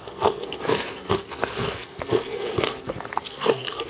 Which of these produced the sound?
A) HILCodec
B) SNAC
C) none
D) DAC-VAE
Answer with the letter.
B